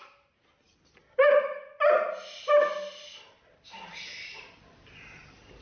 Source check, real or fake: real